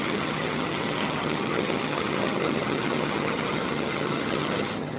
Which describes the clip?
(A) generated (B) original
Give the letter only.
A